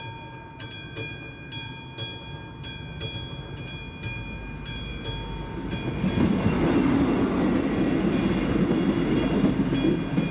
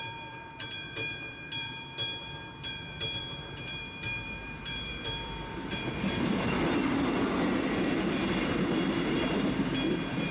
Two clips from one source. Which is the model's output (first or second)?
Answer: second